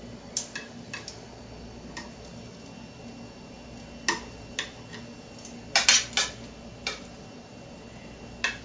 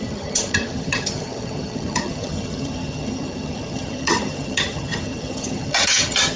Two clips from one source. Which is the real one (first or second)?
first